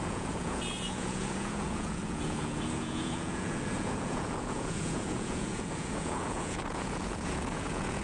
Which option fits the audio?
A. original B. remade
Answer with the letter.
B